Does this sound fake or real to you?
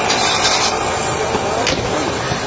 real